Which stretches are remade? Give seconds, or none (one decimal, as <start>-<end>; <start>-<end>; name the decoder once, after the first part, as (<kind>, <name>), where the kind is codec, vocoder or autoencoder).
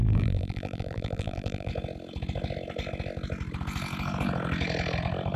0.0-1.7 (vocoder, BigVGAN v2)